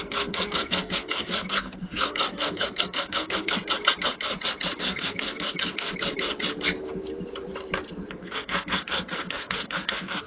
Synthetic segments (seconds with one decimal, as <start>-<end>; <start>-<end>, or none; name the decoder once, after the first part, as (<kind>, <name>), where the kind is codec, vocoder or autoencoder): 0.0-3.6 (codec, SNAC); 4.8-5.9; 8.1-10.3